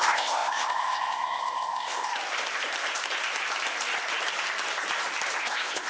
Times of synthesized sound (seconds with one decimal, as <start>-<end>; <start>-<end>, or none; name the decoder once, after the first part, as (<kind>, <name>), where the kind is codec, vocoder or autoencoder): 0.0-2.1 (codec, ZipCodec); 5.4-5.9